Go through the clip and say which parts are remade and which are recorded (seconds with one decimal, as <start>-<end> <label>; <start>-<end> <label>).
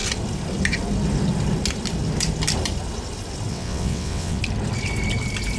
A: 0.0-3.5 recorded; 3.5-4.4 remade; 4.4-5.6 recorded